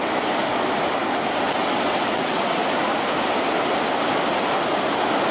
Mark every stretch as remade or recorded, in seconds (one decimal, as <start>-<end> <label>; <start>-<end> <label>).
0.0-1.6 recorded; 1.6-2.4 remade; 2.4-5.3 recorded